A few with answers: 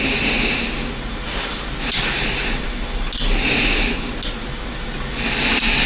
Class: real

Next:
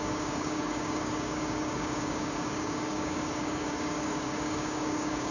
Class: fake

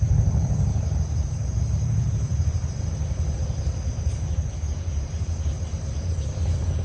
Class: fake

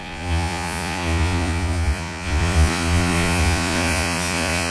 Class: fake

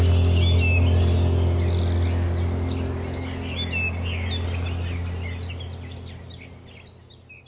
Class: real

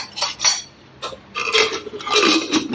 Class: real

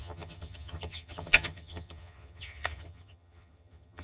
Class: fake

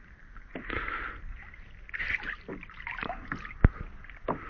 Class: real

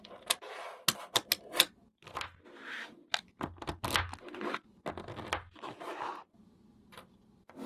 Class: real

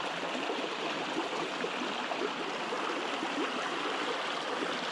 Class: real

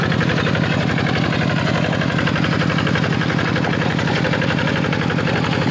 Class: real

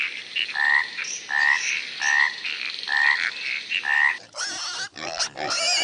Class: real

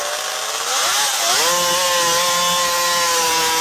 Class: real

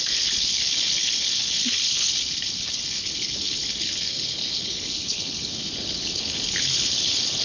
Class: fake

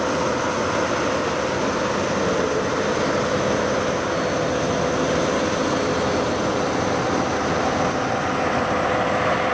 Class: real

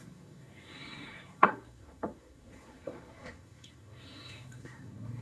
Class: fake